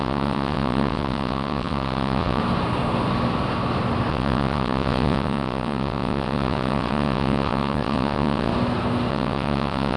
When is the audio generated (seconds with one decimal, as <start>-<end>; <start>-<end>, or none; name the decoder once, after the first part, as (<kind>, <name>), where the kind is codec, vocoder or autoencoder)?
0.0-2.4 (vocoder, WaveNeXt); 4.1-8.5; 9.1-10.0